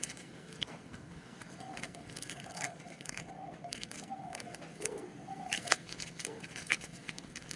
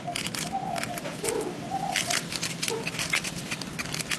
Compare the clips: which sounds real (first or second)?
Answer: second